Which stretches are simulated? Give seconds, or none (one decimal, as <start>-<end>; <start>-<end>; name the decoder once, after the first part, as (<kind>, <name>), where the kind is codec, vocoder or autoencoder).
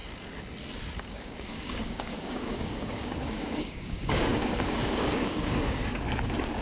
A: 1.0-6.6 (codec, DAC)